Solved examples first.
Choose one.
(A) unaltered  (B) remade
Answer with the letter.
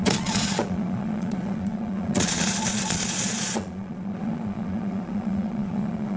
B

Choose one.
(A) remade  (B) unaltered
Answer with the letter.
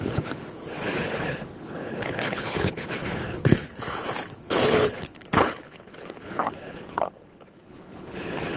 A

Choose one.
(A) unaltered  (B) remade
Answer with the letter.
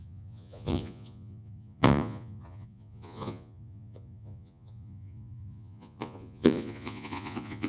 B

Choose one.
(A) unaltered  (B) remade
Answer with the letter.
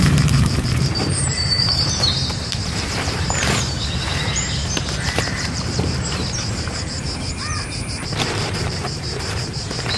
B